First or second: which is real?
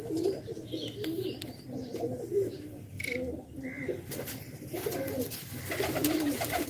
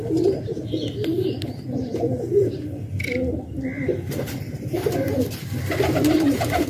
first